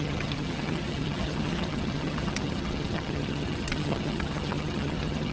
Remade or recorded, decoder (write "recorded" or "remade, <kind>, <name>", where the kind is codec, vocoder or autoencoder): remade, vocoder, HiFi-GAN